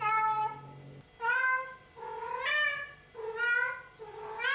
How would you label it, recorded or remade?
recorded